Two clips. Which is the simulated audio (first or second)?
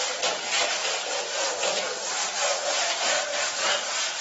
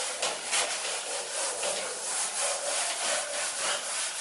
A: second